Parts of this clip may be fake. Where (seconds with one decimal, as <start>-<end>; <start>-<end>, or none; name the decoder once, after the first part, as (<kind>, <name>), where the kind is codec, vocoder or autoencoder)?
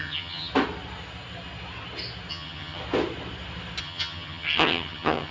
0.0-0.5 (vocoder, HiFi-GAN); 2.3-2.8; 3.8-5.3